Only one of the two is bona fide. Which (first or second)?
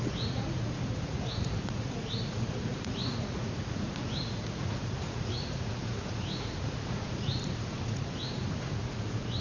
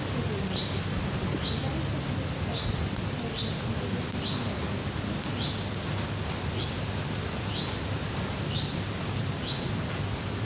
second